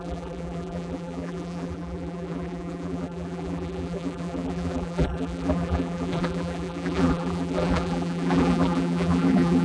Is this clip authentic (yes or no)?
no